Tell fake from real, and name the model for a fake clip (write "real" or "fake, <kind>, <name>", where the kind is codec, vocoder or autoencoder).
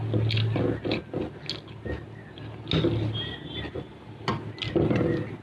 real